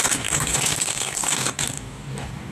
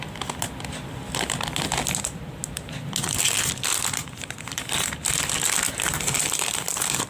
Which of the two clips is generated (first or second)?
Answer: first